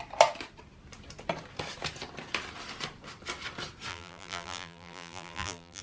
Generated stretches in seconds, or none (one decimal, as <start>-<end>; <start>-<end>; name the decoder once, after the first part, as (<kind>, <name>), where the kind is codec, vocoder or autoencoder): 3.9-5.8 (vocoder, BigVGAN v2)